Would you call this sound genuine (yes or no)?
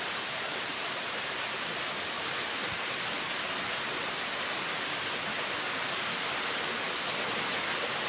yes